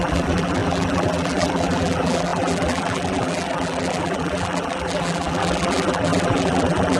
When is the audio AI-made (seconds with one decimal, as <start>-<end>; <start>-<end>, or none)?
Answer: 0.0-7.0